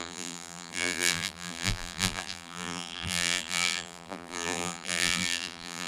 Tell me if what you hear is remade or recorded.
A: remade